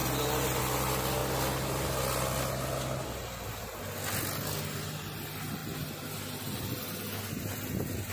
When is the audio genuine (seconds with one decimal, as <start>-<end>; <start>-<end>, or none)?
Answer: 0.0-8.1